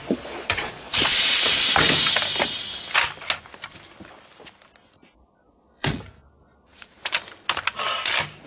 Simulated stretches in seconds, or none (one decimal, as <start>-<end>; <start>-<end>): 0.0-1.4; 5.4-6.0; 6.4-7.2